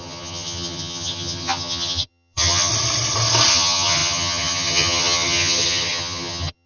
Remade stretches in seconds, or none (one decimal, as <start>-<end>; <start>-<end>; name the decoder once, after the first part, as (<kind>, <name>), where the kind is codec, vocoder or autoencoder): 0.0-2.7 (vocoder, HiFi-GAN); 3.5-6.7